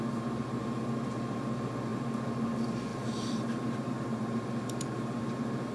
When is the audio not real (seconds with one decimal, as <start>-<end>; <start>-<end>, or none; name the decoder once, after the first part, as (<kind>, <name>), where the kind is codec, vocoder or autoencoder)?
2.9-5.2 (vocoder, BigVGAN v2)